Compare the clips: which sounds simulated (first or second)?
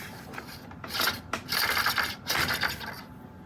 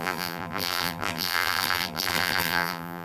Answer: second